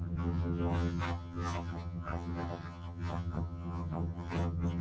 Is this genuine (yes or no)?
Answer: no